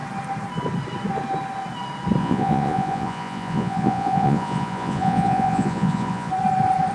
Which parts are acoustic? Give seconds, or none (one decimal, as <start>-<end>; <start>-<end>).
0.0-2.2; 6.3-6.9